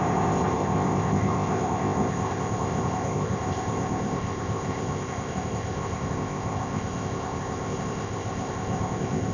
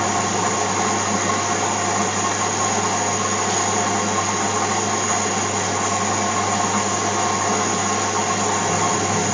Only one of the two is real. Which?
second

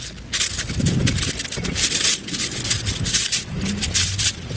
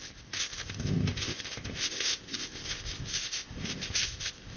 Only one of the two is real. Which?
first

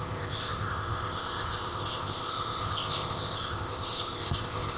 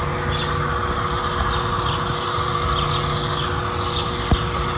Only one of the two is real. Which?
second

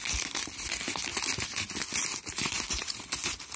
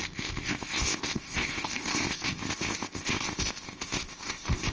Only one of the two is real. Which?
first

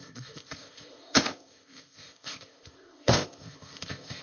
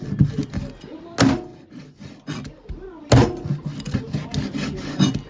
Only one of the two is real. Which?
second